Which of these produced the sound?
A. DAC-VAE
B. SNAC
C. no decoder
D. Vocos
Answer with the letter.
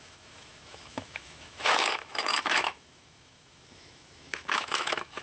A